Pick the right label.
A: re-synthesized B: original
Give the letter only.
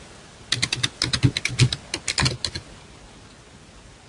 B